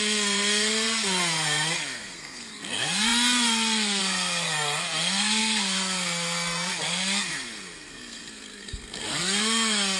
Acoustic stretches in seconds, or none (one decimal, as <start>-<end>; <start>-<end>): none